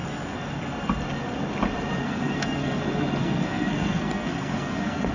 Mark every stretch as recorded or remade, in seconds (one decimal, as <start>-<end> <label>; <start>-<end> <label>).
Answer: 0.0-2.0 recorded; 2.0-2.8 remade; 2.8-3.2 recorded; 3.2-5.1 remade